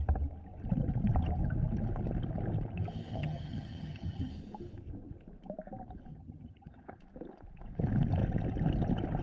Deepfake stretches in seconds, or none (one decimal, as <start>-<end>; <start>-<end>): 3.1-4.3; 6.1-7.0